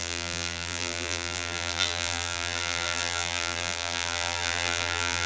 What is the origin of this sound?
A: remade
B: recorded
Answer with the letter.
A